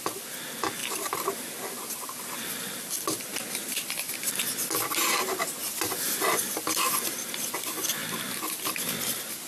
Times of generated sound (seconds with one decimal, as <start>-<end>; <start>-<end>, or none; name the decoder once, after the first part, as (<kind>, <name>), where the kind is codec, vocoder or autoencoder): 0.8-4.3 (vocoder, BigVGAN v2); 8.0-8.9